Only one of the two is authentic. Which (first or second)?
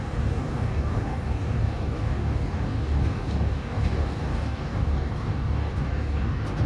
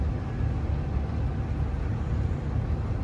second